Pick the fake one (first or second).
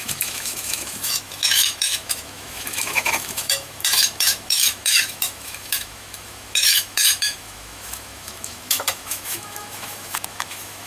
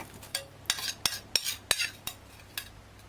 first